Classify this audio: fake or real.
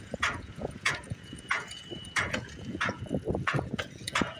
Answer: fake